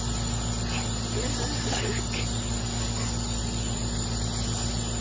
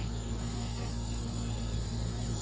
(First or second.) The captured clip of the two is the first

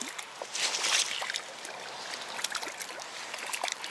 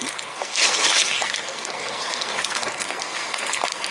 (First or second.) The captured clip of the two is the first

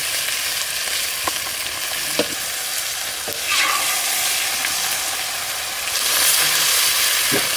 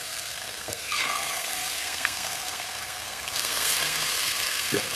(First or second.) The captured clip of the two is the first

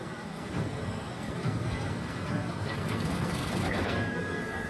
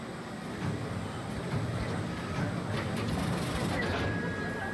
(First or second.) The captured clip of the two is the second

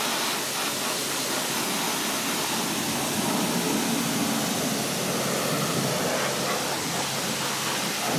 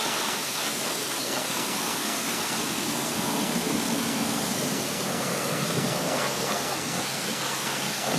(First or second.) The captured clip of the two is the first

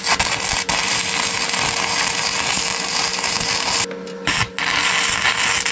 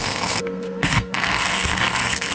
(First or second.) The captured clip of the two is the first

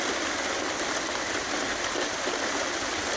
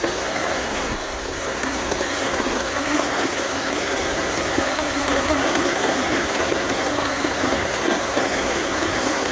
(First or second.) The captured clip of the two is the first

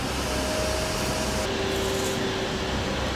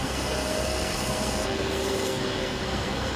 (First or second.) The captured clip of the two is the first